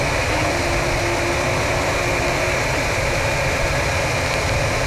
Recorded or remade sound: recorded